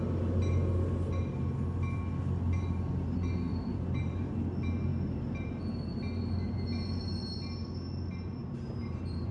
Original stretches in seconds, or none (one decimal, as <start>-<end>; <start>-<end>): 0.0-3.5; 4.3-4.9; 5.6-8.4